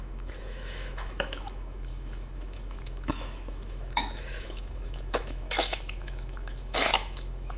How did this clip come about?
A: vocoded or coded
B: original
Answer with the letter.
A